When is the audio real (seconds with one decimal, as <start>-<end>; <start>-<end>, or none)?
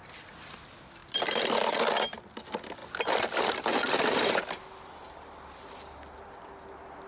0.0-7.1